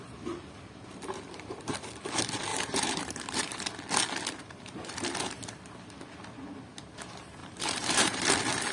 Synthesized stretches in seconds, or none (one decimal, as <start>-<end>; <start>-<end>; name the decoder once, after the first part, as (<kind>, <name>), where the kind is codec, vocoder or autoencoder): 2.5-3.7 (vocoder, BigVGAN v2); 4.4-5.1; 7.4-8.2